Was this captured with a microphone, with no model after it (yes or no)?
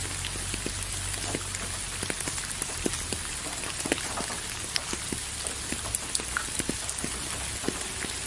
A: yes